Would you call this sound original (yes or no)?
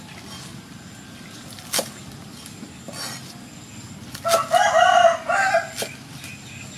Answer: yes